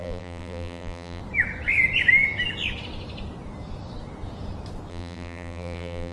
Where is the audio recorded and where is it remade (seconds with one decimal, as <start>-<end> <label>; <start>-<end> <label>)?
0.0-1.2 remade; 1.2-4.9 recorded; 4.9-6.1 remade